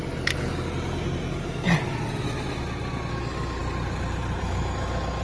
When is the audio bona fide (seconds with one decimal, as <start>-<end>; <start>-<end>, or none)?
0.0-3.1; 3.6-4.4

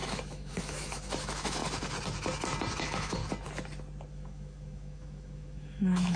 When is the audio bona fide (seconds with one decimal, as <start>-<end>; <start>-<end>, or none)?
1.6-2.8; 3.2-4.1

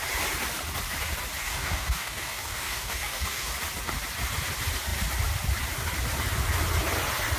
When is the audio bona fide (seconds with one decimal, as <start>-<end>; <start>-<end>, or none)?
0.0-1.4; 3.5-7.4